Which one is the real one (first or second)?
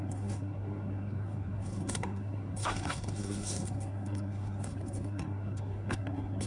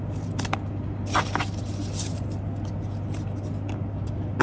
second